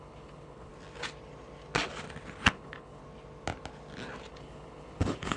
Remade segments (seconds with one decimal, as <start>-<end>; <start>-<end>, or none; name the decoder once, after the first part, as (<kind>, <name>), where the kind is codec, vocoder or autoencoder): 0.0-0.7 (codec, HILCodec); 2.5-3.0; 4.3-5.4